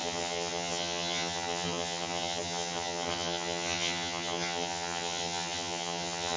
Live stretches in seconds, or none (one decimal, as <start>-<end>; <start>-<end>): none